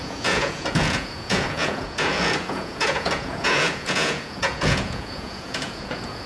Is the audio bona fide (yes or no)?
no